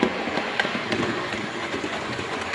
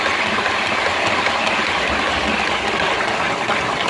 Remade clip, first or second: first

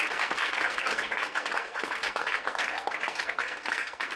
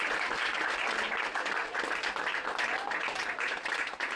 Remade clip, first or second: first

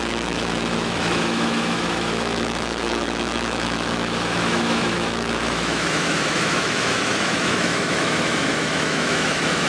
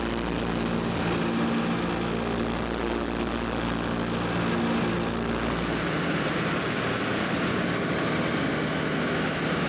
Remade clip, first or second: first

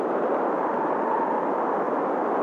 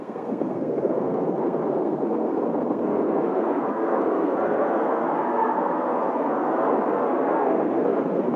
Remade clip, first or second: second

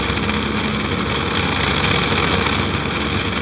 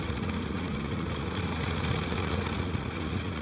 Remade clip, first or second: second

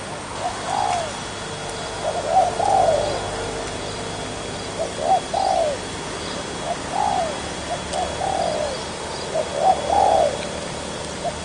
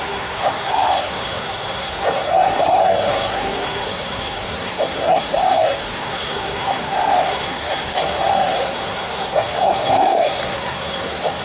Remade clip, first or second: second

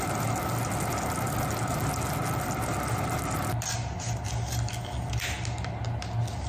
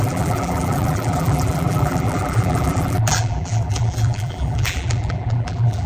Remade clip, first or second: second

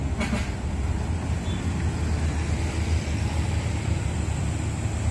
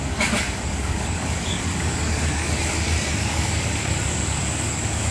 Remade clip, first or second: second